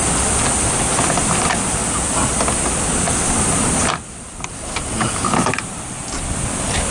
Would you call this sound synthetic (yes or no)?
no